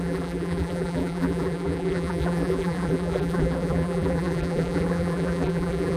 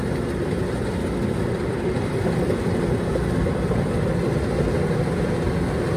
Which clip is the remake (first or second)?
first